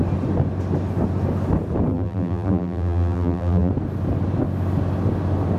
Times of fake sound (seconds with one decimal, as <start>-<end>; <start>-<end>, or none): 1.9-3.7